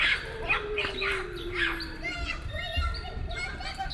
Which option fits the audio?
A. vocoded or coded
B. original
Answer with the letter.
B